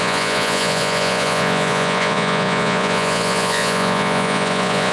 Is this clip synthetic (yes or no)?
yes